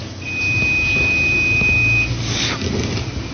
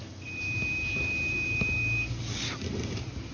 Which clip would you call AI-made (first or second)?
second